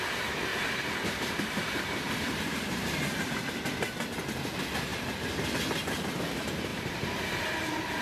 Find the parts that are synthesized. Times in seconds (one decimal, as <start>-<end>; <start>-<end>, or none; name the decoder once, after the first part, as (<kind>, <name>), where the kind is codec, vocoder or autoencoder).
0.5-2.1 (vocoder, BigVGAN v2); 6.7-7.2